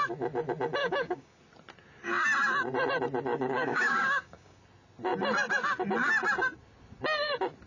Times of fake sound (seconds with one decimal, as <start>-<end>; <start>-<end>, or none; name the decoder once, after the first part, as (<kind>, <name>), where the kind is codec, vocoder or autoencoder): 0.8-1.4 (codec, DAC); 3.3-4.6